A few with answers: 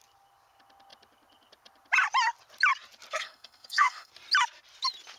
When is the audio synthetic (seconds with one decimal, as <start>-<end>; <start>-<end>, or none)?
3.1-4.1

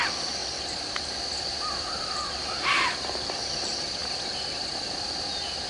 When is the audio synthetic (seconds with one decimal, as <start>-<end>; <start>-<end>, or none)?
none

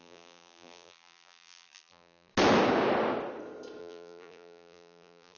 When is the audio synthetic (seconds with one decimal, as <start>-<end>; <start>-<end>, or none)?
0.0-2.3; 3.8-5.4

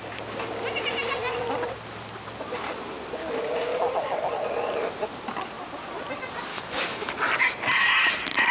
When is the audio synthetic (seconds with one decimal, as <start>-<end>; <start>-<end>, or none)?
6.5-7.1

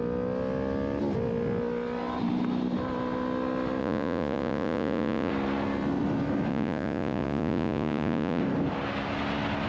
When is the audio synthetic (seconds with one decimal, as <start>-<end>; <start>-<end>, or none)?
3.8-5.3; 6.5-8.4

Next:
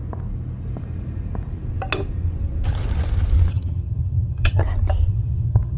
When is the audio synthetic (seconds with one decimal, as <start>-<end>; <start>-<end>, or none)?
3.5-4.6; 5.1-5.8

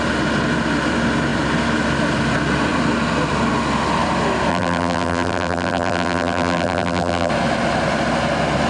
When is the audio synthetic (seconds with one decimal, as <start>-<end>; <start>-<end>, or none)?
4.5-7.3

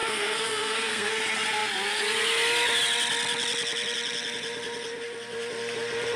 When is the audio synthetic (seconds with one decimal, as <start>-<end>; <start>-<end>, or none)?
0.0-1.1